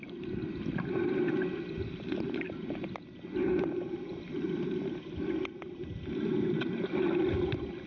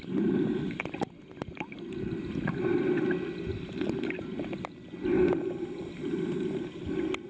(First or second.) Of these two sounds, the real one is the second